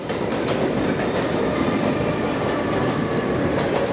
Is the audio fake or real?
real